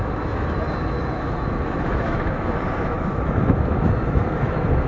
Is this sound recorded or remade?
remade